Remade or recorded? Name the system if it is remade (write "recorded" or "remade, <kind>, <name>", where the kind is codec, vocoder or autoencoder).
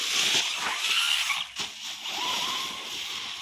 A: recorded